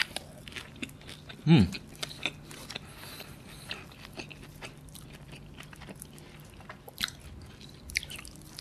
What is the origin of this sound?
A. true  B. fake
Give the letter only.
A